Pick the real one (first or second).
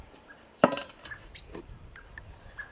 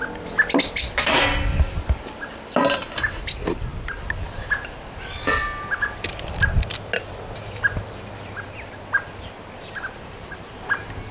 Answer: second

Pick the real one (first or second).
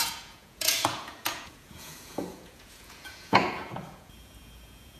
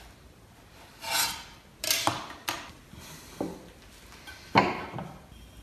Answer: second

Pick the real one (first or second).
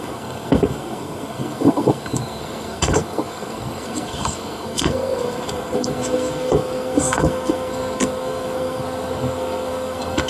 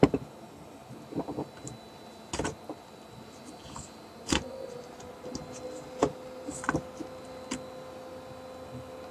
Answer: second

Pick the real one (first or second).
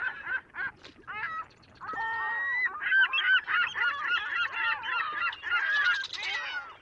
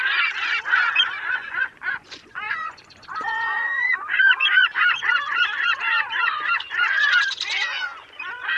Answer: first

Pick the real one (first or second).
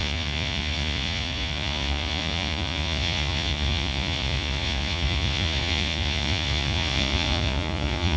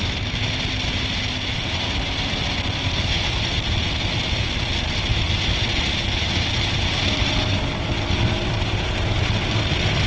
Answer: second